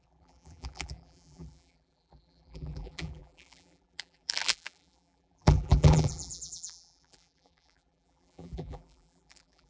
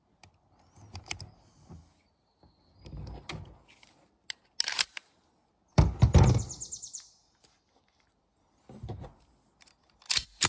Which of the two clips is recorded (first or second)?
second